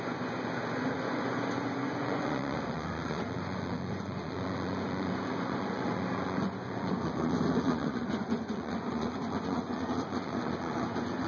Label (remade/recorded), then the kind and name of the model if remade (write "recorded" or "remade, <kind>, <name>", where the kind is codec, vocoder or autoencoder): remade, vocoder, Vocos